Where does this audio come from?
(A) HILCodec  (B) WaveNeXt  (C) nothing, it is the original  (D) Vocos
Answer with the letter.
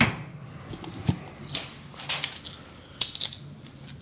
C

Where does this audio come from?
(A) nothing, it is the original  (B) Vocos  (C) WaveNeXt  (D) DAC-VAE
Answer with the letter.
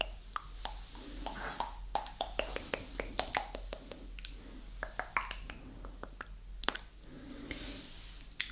A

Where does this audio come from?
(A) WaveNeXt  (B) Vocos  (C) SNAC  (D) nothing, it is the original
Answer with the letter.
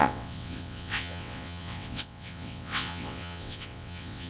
A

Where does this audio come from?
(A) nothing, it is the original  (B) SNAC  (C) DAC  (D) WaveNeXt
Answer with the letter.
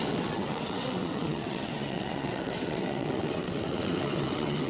D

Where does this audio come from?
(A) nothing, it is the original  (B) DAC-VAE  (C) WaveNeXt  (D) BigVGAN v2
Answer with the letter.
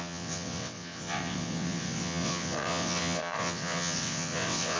C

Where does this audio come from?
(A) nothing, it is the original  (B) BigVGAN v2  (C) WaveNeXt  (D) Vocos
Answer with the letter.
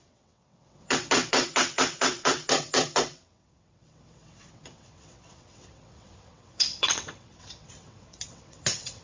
C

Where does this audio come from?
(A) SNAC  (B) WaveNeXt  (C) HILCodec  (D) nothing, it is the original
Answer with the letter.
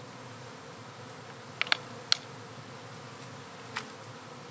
D